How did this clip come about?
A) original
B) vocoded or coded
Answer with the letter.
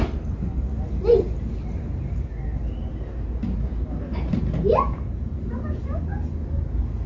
A